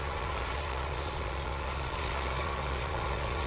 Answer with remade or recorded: remade